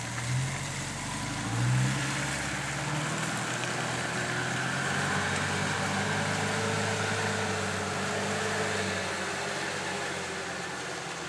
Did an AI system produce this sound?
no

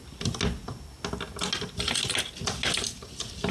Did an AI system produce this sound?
no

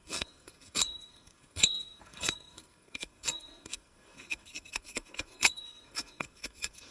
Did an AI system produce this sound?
yes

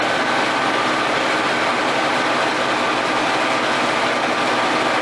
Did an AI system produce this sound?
no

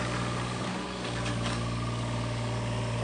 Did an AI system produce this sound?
yes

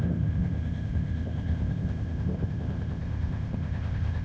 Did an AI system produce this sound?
yes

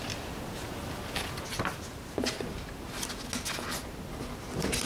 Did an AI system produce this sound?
no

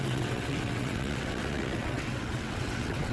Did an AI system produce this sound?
yes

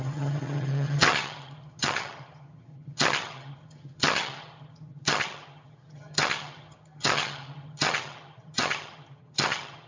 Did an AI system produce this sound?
yes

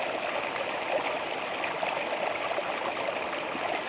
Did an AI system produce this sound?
no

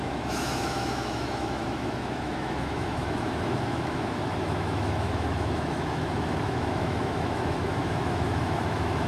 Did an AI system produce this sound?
yes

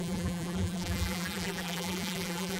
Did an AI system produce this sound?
yes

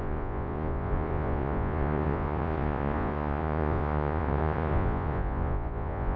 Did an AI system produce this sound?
yes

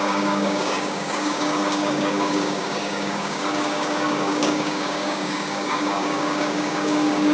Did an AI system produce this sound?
yes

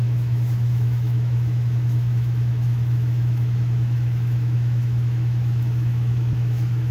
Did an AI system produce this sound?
yes